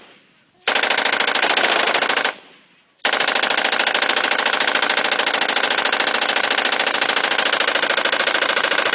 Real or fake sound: real